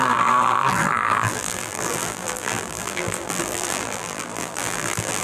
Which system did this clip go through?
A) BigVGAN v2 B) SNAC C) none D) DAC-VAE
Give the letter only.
A